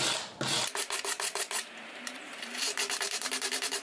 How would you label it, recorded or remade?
remade